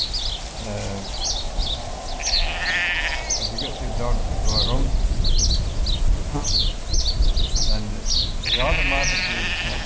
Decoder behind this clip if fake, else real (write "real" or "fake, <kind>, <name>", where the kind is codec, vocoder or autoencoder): real